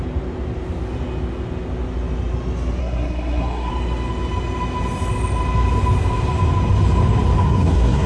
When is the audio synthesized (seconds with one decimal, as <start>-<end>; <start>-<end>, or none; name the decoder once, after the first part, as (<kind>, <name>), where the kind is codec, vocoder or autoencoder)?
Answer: 2.8-3.7 (codec, SNAC); 7.4-8.1